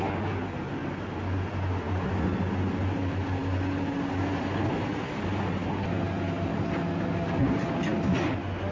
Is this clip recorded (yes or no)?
yes